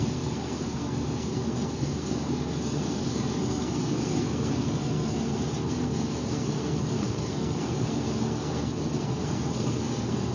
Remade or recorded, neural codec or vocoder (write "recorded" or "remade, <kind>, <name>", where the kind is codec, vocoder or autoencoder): remade, codec, SNAC